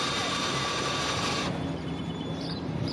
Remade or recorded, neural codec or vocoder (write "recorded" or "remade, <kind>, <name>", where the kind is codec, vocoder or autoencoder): remade, vocoder, BigVGAN v2